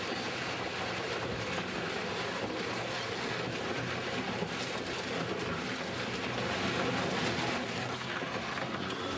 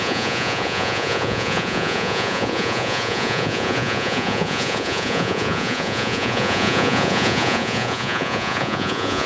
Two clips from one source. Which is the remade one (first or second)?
second